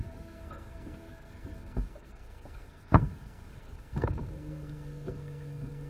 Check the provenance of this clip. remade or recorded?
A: remade